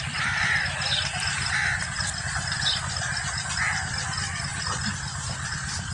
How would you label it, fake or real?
real